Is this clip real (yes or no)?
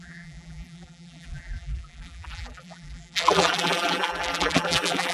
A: no